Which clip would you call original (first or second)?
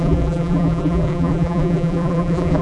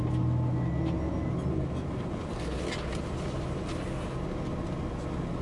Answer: second